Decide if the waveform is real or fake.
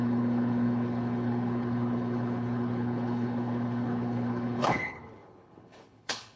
fake